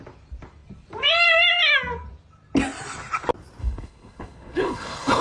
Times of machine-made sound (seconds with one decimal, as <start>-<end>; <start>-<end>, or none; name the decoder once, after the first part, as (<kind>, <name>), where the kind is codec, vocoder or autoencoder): 3.6-5.2 (codec, HILCodec)